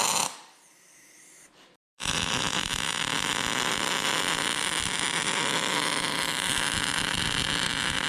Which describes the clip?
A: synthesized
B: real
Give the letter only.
A